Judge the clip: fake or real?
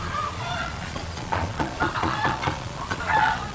fake